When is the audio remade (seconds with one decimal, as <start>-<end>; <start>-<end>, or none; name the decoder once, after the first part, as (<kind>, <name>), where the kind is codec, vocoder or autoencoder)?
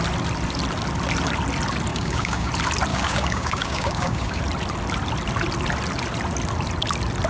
1.9-2.5 (codec, DAC); 2.9-4.4